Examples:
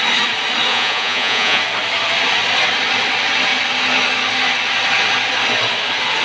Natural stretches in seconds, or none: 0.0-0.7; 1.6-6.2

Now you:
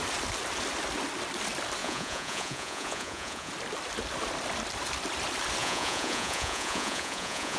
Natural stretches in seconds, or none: 0.0-1.8; 3.5-5.6

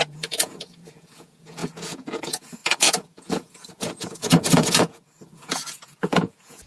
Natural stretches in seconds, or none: none

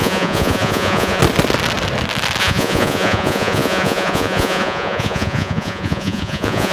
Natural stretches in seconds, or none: 1.2-2.4

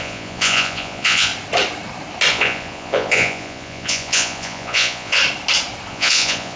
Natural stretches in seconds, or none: 1.3-2.3; 5.2-5.9

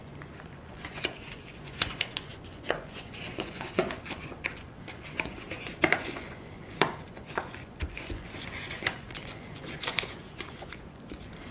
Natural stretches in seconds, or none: none

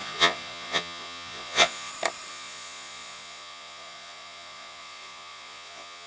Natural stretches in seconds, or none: 1.9-2.3

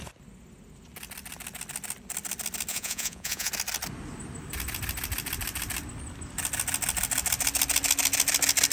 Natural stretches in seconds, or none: 0.0-2.7; 3.5-8.7